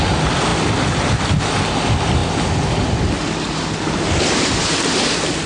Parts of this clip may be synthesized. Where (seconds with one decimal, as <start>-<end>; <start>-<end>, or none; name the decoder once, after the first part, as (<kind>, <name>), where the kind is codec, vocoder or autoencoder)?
none